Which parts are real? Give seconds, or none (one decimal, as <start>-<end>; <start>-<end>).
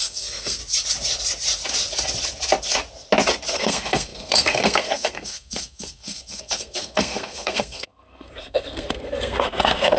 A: 0.6-3.5